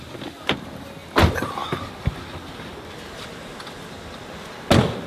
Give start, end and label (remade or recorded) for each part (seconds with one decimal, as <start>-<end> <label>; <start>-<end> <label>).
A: 0.0-5.1 recorded